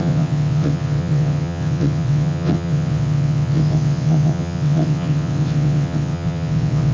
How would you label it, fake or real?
fake